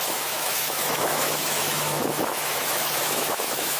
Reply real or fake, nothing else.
fake